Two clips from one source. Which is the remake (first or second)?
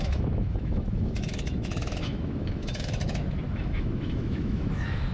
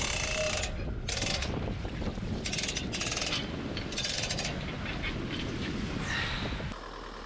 first